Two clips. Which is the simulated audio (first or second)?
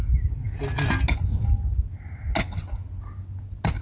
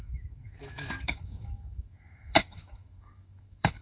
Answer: second